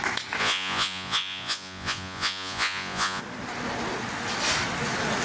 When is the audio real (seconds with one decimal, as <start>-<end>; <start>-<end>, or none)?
0.0-0.4; 3.2-5.2